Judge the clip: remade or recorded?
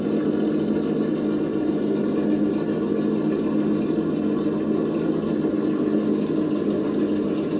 recorded